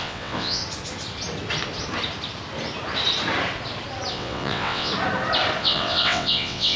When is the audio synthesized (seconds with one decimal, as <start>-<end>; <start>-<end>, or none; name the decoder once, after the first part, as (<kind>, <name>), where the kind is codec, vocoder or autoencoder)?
0.0-0.6 (vocoder, WaveNeXt); 4.1-4.9; 5.6-6.8